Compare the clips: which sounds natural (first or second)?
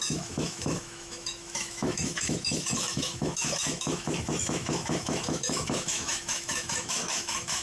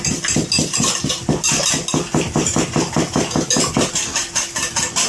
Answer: second